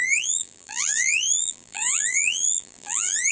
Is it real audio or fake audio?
fake